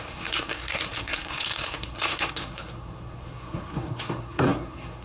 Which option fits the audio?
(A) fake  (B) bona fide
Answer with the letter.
A